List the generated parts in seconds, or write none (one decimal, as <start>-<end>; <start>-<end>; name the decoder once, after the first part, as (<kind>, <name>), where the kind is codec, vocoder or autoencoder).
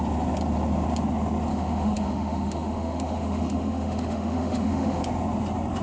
1.5-5.0 (autoencoder, DAC-VAE)